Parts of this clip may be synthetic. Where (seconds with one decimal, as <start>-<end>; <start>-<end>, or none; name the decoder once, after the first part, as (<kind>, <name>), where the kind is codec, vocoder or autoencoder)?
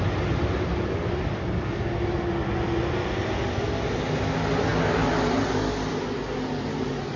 none